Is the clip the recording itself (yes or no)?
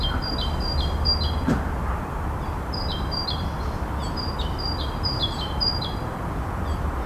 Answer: yes